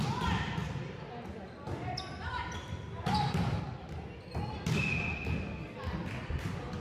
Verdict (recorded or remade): recorded